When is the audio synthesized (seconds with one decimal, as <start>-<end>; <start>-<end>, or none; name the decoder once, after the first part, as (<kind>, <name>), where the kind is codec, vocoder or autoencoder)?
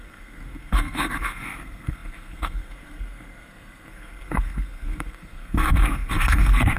0.0-6.8 (codec, SNAC)